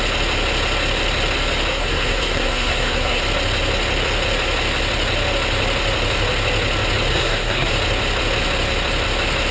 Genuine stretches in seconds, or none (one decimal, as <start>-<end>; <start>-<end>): 0.0-1.7; 3.2-7.1; 7.7-9.5